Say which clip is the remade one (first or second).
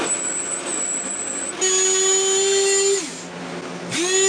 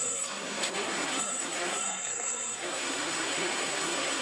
second